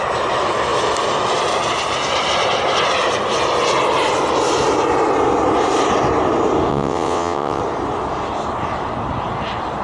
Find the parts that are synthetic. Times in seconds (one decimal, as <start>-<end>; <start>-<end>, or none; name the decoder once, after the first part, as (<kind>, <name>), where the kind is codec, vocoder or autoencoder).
6.7-7.6 (vocoder, WaveNeXt)